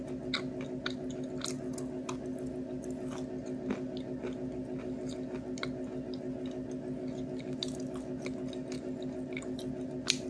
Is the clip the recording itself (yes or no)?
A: yes